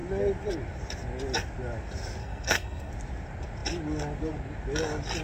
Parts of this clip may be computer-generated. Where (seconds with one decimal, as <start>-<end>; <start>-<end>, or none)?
2.2-2.9